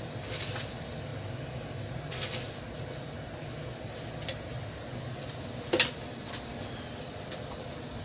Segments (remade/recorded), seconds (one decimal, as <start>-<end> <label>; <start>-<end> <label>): 0.0-1.1 remade; 1.1-5.9 recorded; 5.9-8.0 remade